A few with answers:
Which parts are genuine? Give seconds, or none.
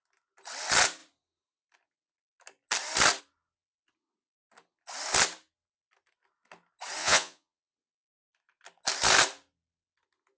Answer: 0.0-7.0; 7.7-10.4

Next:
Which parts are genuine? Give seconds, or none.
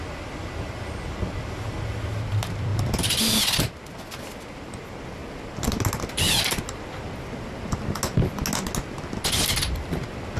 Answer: 0.0-10.4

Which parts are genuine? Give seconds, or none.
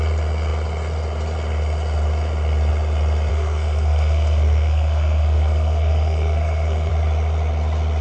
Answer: 0.0-3.3; 6.9-8.0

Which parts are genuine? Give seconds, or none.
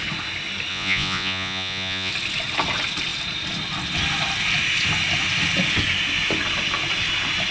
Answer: 0.0-0.7; 2.1-7.5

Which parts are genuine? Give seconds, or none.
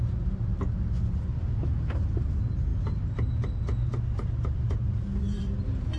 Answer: 0.0-6.0